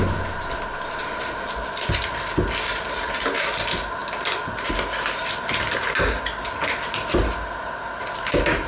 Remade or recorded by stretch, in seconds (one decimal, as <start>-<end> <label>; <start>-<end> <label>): 0.0-8.7 recorded